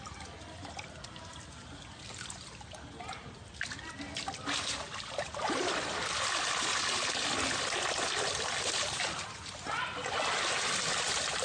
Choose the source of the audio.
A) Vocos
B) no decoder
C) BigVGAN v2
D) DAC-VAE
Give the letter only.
B